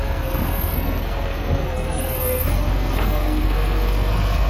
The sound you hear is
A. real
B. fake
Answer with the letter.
B